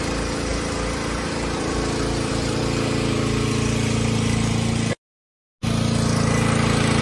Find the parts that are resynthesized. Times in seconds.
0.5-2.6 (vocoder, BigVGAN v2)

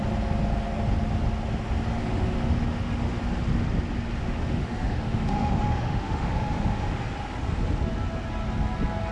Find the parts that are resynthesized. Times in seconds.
2.0-3.2 (autoencoder, DAC-VAE); 4.2-7.0

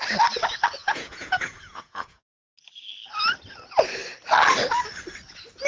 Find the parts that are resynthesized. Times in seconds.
0.8-2.5 (vocoder, Vocos)

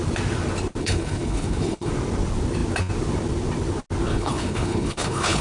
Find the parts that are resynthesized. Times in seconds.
0.8-1.9 (codec, HILCodec); 4.1-5.4

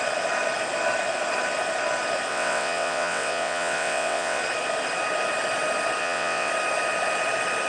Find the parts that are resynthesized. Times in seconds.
2.3-4.4 (vocoder, WaveNeXt); 6.0-6.5

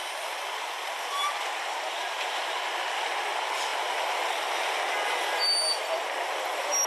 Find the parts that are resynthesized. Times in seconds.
0.0-2.8 (vocoder, BigVGAN v2)

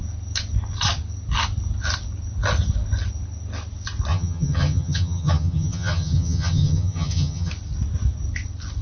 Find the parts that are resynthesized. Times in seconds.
4.1-7.5 (vocoder, HiFi-GAN)